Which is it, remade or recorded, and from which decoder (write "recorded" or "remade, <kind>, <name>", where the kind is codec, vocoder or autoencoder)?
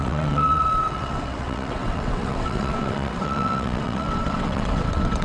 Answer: remade, vocoder, WaveNeXt